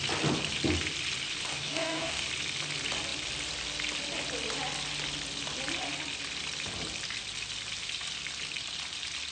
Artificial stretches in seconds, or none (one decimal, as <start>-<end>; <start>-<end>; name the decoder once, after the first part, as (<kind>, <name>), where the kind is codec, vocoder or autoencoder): 1.5-2.2 (codec, DAC)